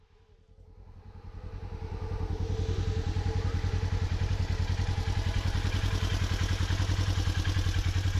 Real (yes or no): yes